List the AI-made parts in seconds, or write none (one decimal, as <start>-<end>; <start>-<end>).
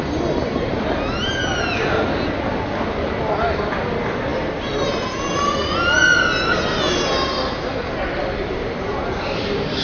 none